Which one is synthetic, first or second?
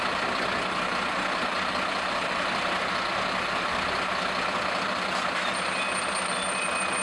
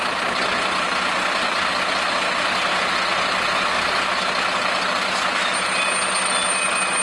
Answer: first